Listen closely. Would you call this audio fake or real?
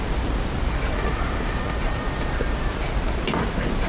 real